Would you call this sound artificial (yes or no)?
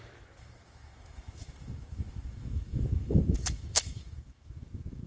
yes